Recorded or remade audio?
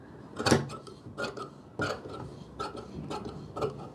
recorded